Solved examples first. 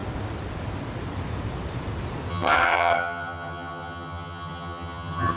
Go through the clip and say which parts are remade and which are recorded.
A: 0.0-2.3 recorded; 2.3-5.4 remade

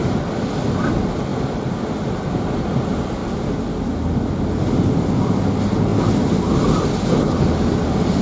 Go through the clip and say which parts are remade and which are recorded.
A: 0.0-8.2 recorded

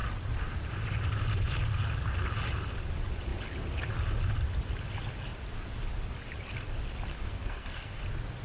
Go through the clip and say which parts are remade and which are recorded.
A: 0.0-7.1 recorded; 7.1-8.0 remade; 8.0-8.4 recorded

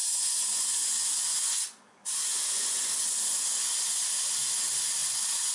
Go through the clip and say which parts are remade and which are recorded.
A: 0.0-2.9 remade; 2.9-5.5 recorded